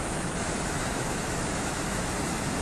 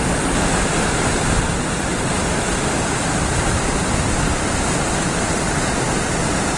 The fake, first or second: first